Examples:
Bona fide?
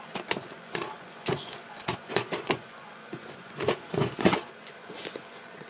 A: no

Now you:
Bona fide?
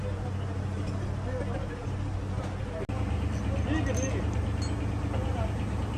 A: yes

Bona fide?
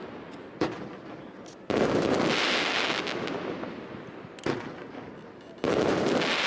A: yes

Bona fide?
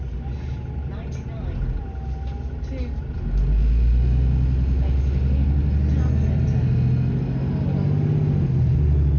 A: yes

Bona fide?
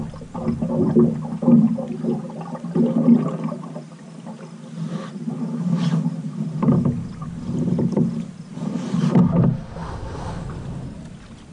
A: yes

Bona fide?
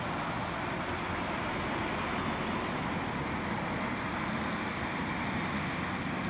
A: yes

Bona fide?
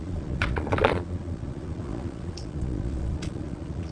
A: no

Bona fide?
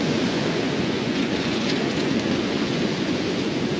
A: no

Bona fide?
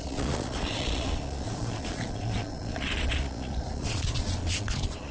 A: no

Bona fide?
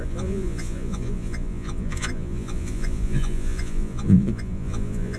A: no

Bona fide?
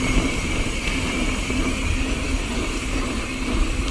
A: yes